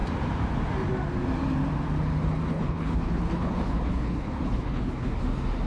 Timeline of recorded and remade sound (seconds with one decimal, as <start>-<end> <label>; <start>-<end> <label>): 0.0-2.5 recorded; 2.5-5.2 remade; 5.2-5.7 recorded

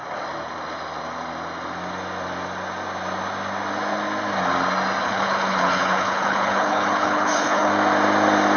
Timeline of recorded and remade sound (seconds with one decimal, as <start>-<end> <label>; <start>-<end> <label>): 0.0-5.0 recorded; 5.0-7.7 remade; 7.7-8.6 recorded